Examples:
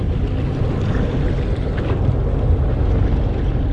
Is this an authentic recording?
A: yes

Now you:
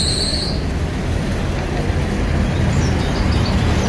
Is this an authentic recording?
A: yes